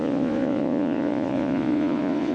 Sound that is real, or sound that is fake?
fake